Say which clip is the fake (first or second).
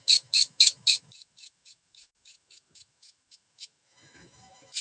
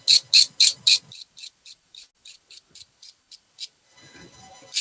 first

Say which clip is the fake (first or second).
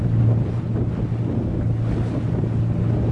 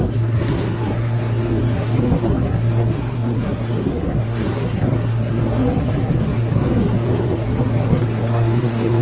second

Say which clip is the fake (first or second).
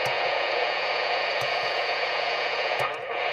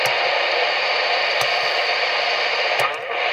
first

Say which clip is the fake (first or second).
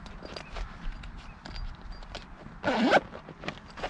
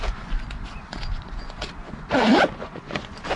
second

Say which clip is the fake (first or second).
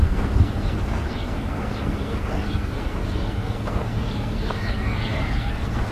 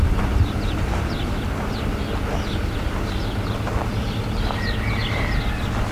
first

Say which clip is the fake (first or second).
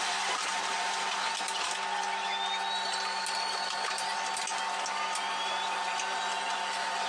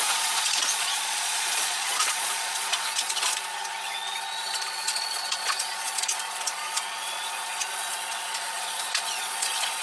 second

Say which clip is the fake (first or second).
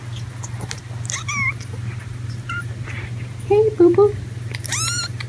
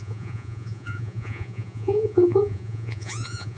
second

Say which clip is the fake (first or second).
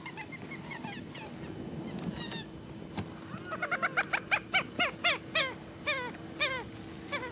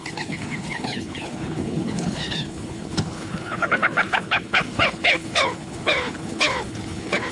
second